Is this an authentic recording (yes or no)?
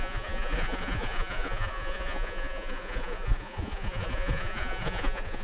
no